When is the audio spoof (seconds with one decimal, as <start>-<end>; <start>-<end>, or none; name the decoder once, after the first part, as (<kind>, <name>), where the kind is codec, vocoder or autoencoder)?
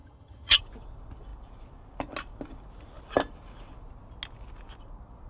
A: 0.0-0.6 (vocoder, HiFi-GAN)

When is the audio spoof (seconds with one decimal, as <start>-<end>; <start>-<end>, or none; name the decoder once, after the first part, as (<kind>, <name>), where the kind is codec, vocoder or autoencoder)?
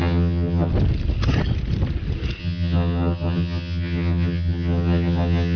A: 0.0-0.7 (vocoder, HiFi-GAN); 2.4-5.6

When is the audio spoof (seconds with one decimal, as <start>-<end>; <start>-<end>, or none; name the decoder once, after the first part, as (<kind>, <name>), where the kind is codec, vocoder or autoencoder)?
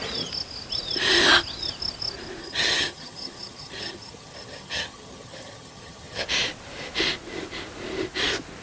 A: 2.4-6.2 (vocoder, HiFi-GAN)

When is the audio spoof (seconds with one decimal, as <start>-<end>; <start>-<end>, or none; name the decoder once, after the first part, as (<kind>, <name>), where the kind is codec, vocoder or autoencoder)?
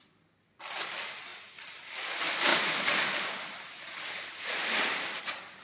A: none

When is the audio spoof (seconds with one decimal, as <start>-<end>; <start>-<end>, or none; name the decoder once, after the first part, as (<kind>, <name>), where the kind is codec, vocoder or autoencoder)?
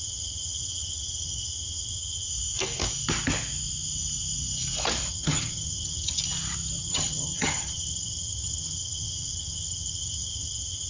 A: 0.0-2.3 (vocoder, HiFi-GAN); 5.1-6.2; 6.8-10.9